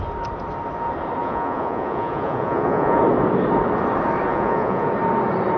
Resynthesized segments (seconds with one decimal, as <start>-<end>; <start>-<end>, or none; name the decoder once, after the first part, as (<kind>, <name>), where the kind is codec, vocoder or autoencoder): 1.2-3.0 (vocoder, Vocos); 4.3-4.9